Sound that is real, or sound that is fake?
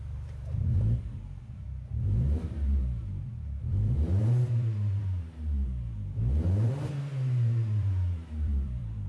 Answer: fake